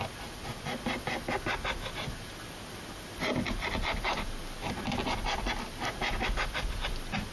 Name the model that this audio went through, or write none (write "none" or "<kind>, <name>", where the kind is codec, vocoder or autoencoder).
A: none